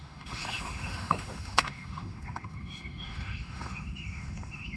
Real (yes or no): no